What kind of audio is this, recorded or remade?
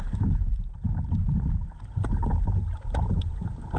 recorded